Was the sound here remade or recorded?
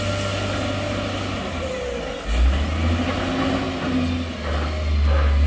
recorded